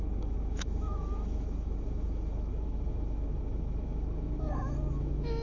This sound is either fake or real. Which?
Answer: fake